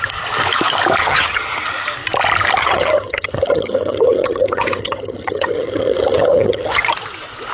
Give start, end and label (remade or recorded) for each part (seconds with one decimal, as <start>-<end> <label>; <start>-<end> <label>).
0.0-1.0 recorded; 1.0-1.6 remade; 1.6-2.6 recorded; 2.6-6.8 remade; 6.8-7.5 recorded